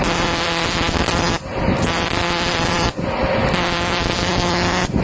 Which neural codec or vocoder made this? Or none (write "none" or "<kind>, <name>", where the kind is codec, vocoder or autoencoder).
none